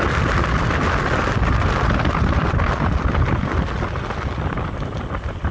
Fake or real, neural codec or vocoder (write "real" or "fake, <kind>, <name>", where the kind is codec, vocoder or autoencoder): real